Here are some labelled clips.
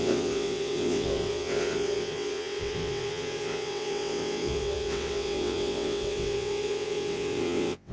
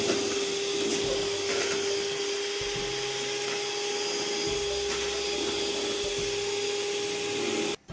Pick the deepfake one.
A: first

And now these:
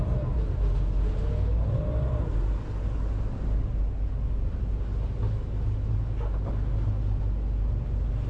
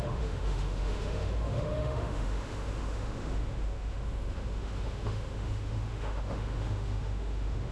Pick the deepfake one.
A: second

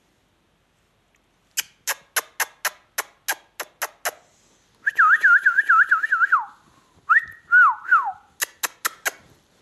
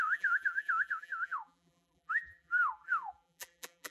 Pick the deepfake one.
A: second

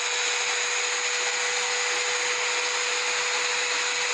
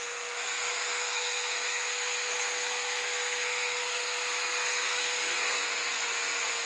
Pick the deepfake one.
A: second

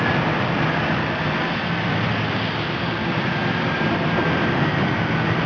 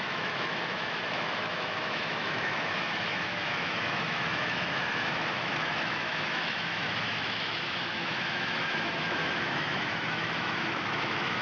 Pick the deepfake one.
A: second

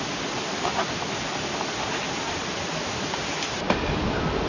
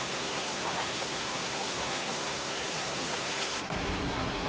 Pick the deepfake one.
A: second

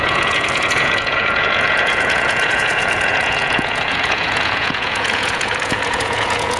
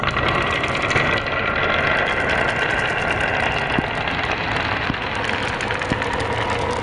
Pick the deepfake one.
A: first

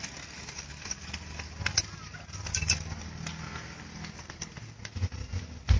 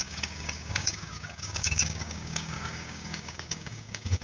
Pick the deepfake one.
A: second